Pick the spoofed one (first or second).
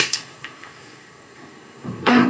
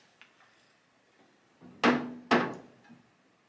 first